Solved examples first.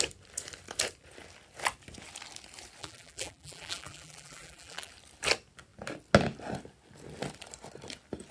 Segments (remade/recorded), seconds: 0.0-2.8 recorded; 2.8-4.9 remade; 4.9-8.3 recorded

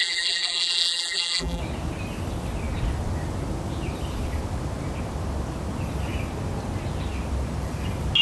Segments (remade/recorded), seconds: 0.0-1.6 remade; 1.6-8.2 recorded

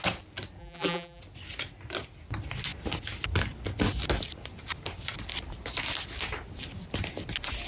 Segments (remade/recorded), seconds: 0.0-0.6 recorded; 0.6-1.2 remade; 1.2-7.7 recorded

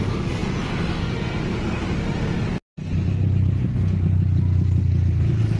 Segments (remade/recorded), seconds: 0.0-5.6 recorded

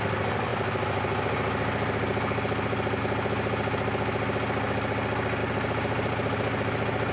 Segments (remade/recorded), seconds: 0.0-5.4 recorded; 5.4-7.1 remade

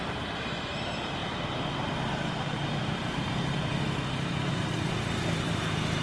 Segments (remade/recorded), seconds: 0.0-1.2 remade; 1.2-2.3 recorded; 2.3-3.7 remade; 3.7-4.5 recorded; 4.5-6.0 remade

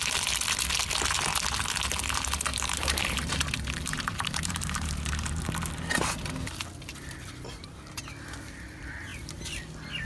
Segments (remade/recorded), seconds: 0.0-2.5 recorded; 2.5-3.4 remade; 3.4-3.9 recorded; 3.9-5.4 remade; 5.4-10.1 recorded